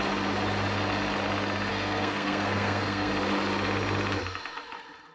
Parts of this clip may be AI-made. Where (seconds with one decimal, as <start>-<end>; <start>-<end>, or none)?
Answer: 1.7-3.1